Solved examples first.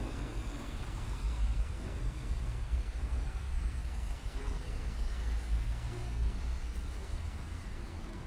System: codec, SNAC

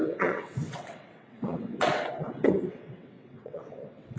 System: vocoder, WaveNeXt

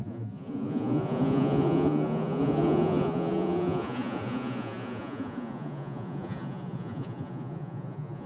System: vocoder, Vocos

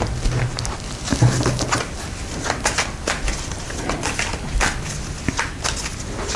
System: none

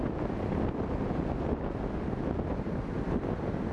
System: none